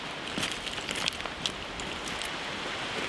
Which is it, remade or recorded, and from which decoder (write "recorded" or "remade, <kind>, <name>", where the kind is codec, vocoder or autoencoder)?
recorded